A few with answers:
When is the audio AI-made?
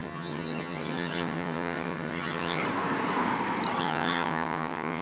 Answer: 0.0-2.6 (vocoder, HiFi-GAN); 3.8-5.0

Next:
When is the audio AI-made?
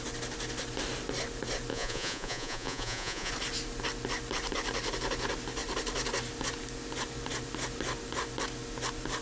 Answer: 1.7-3.3 (vocoder, Vocos)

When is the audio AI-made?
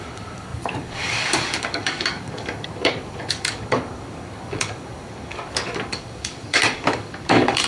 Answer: 0.0-7.7 (codec, DAC)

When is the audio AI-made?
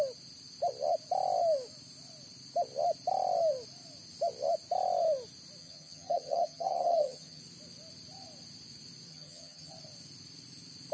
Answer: 5.6-7.4 (vocoder, HiFi-GAN); 9.1-9.7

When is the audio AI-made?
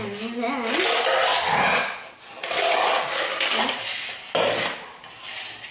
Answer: none